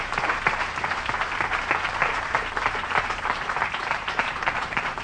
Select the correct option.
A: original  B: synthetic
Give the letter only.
B